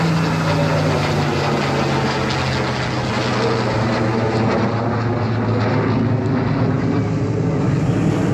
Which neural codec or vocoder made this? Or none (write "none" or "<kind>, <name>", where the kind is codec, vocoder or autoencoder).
none